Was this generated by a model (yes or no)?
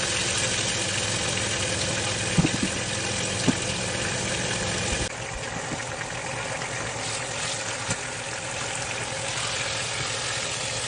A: no